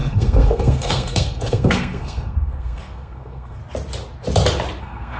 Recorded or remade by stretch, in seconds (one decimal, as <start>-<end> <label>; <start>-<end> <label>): 0.0-3.6 remade; 3.6-4.8 recorded; 4.8-5.2 remade